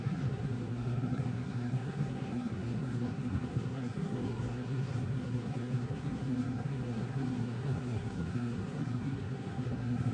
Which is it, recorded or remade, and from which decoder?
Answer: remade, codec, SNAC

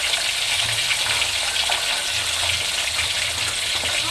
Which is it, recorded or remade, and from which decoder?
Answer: recorded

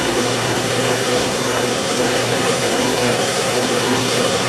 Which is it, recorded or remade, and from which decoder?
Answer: remade, codec, SNAC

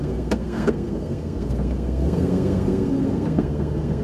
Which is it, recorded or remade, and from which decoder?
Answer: remade, codec, SNAC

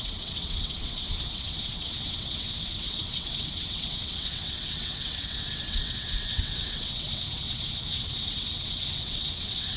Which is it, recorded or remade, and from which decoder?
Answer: remade, vocoder, WaveNeXt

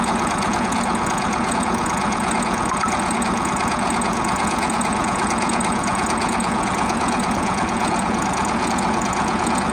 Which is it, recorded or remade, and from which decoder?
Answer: remade, vocoder, Vocos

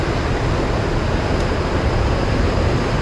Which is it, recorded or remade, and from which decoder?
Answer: recorded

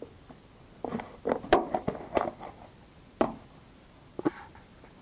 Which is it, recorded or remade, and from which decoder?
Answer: recorded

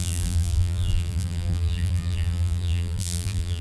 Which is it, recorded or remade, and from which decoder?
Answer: remade, vocoder, BigVGAN v2